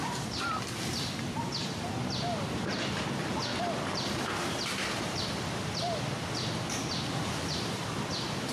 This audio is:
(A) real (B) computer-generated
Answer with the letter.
B